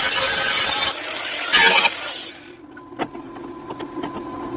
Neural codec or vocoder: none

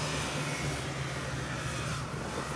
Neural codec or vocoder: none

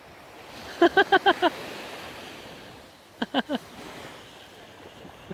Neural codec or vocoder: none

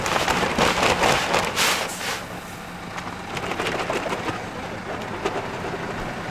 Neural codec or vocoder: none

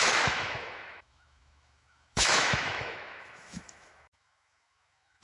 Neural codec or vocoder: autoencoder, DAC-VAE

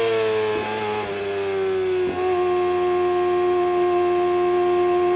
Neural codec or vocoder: none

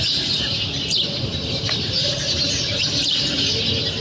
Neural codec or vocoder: vocoder, BigVGAN v2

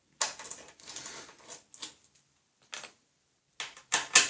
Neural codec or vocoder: none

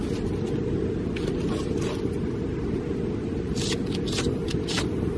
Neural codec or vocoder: none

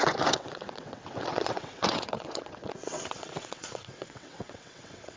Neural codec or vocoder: vocoder, WaveNeXt